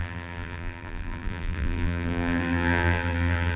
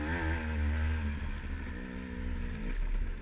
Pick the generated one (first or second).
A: first